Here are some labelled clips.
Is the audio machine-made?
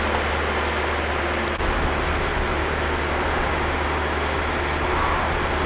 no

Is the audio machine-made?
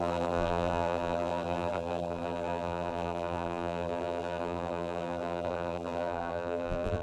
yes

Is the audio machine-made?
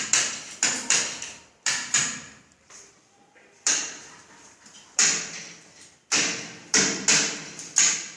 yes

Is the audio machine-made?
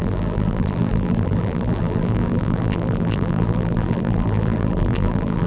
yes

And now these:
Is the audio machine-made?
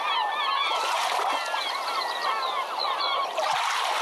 no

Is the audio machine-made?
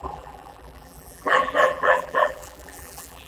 yes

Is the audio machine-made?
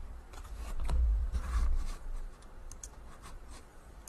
yes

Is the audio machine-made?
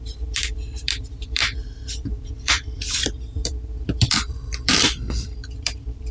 yes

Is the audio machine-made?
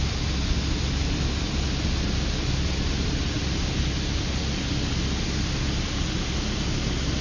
no